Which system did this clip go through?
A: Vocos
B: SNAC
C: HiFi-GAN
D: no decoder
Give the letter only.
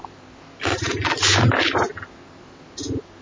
D